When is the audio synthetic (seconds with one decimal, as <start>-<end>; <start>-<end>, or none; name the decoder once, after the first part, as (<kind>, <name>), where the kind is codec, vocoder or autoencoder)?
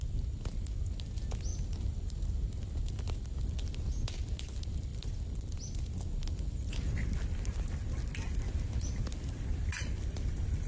1.5-2.3 (vocoder, BigVGAN v2)